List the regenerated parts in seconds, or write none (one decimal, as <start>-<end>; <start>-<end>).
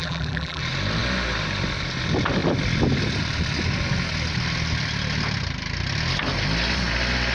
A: 0.0-0.6